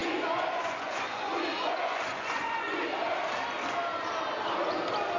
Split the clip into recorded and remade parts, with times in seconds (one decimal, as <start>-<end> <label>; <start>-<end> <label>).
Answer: 0.0-2.8 remade; 2.8-5.2 recorded